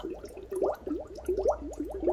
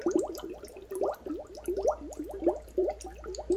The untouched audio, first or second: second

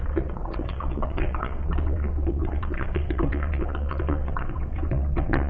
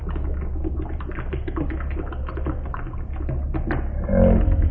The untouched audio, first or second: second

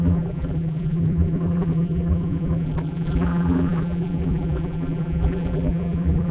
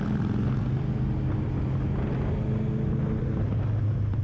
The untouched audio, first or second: second